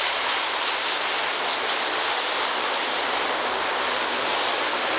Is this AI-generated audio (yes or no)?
no